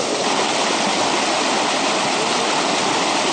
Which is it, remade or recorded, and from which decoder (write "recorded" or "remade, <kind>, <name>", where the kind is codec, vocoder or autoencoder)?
recorded